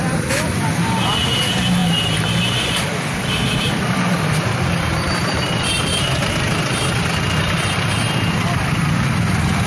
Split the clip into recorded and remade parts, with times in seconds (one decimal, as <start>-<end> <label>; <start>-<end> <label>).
0.0-1.8 recorded; 1.8-6.3 remade; 6.3-9.7 recorded